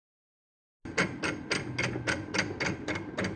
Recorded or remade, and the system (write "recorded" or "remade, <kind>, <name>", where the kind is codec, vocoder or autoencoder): recorded